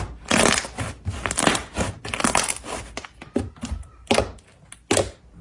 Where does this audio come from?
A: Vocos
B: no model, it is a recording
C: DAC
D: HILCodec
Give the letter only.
B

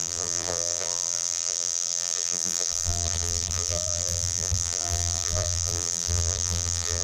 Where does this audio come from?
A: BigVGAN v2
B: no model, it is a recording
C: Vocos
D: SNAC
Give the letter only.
A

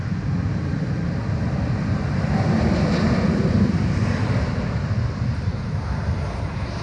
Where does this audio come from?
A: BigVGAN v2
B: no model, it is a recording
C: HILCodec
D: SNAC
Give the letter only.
A